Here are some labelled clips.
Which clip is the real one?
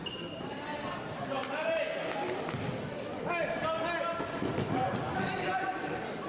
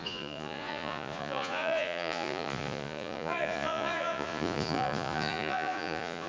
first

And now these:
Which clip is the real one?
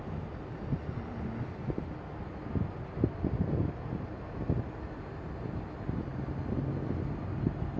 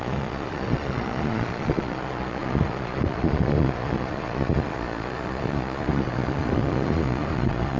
first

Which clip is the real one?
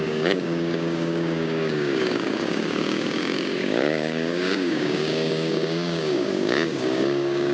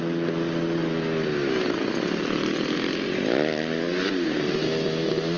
second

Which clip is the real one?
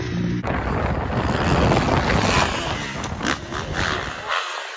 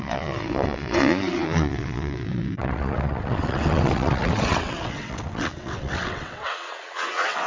first